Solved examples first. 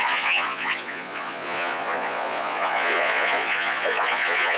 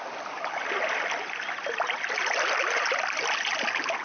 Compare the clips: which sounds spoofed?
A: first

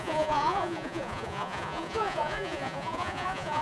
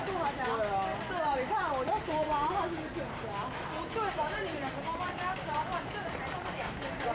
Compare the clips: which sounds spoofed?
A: first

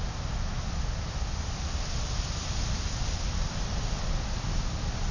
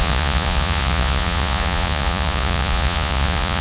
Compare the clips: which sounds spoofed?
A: second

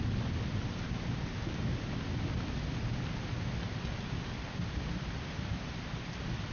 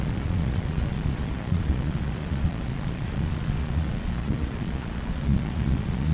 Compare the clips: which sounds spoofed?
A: second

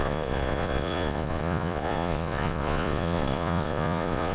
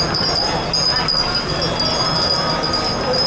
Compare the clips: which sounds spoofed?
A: first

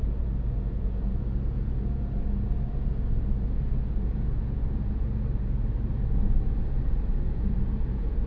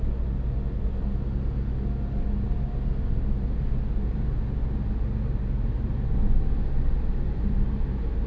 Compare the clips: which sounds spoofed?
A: first